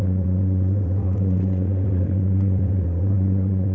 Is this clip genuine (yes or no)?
no